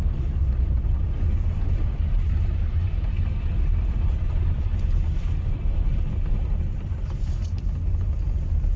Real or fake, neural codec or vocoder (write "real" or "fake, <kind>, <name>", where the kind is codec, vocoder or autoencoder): real